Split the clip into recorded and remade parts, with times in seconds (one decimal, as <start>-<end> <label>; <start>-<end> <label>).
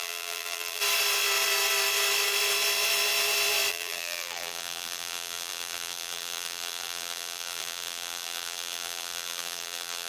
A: 0.0-0.8 remade; 0.8-3.7 recorded; 3.7-10.1 remade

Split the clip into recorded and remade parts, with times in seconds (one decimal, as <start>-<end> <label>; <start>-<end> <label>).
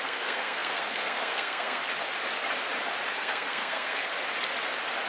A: 0.0-1.8 remade; 1.8-3.1 recorded; 3.1-4.1 remade; 4.1-5.1 recorded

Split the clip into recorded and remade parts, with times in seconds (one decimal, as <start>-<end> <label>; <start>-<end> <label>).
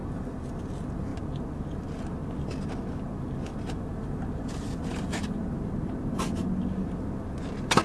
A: 0.0-0.6 remade; 0.6-3.5 recorded; 3.5-5.5 remade; 5.5-7.8 recorded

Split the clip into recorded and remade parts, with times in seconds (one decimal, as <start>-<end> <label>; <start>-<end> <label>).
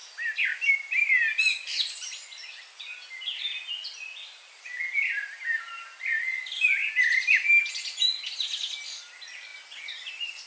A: 0.0-10.5 recorded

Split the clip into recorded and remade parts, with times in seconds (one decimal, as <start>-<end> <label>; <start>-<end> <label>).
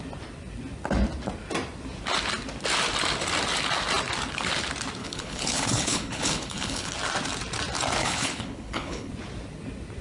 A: 0.0-5.0 recorded; 5.0-6.9 remade; 6.9-8.0 recorded; 8.0-9.1 remade; 9.1-10.0 recorded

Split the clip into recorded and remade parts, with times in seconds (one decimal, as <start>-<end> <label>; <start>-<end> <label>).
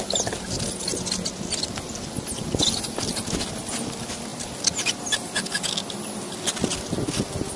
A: 0.0-7.6 recorded